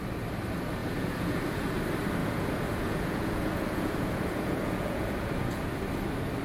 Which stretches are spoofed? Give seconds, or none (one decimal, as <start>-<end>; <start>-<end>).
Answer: 0.8-1.8; 2.2-5.7